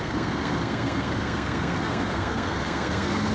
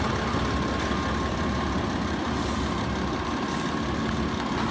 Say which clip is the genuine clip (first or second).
second